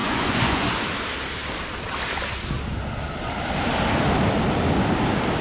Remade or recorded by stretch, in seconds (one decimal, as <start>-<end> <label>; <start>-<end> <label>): 0.0-0.7 remade; 0.7-5.4 recorded

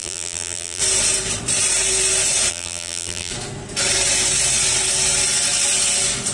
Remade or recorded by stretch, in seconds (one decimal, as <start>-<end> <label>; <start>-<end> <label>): 0.0-0.8 remade; 0.8-2.5 recorded; 2.5-3.3 remade; 3.3-6.3 recorded

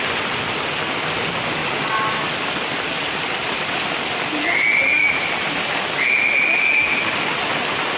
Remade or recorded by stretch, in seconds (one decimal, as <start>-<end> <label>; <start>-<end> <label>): 0.0-3.4 recorded; 3.4-4.4 remade; 4.4-5.0 recorded; 5.0-5.7 remade; 5.7-8.0 recorded

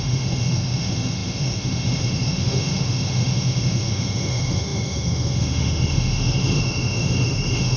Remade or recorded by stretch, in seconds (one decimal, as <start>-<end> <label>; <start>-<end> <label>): 0.0-7.8 remade

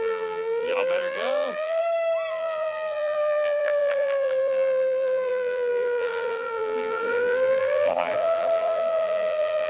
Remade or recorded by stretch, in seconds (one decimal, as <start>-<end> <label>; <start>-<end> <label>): 0.0-1.8 remade; 1.8-2.3 recorded; 2.3-9.7 remade

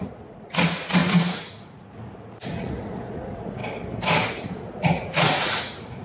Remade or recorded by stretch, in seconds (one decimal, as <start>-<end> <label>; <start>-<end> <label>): 0.0-3.6 remade; 3.6-4.3 recorded; 4.3-6.0 remade

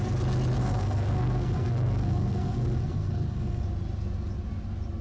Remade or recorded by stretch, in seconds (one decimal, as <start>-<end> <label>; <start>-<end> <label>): 0.0-0.6 recorded; 0.6-3.6 remade; 3.6-5.0 recorded

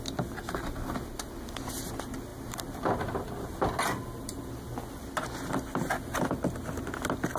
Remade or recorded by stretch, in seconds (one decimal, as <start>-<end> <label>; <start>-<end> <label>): 0.0-2.3 recorded; 2.3-6.7 remade; 6.7-7.4 recorded